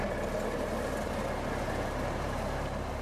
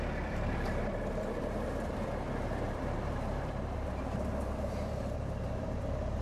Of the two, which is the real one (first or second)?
first